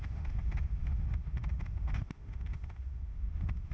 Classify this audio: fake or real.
fake